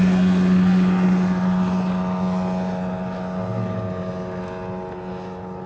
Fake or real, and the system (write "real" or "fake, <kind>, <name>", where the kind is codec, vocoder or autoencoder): real